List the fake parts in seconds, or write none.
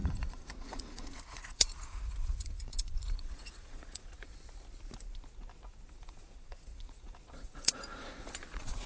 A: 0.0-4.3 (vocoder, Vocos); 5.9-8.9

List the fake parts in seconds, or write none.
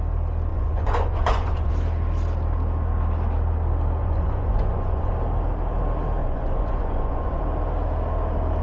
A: 0.5-1.7 (vocoder, Vocos); 4.0-5.1; 6.2-7.4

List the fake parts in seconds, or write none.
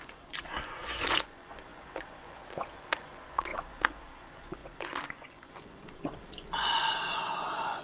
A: 0.0-7.8 (vocoder, Vocos)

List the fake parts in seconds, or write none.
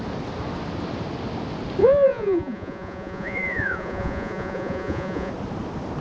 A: 1.8-5.3 (vocoder, Vocos)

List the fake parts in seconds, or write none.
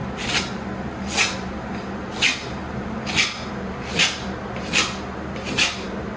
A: none